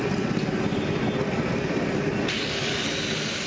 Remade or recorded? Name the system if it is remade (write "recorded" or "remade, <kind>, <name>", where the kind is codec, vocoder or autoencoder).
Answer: recorded